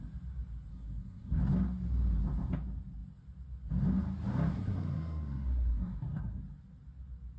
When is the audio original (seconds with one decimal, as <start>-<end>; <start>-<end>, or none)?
0.0-0.7; 1.4-4.5; 6.4-7.4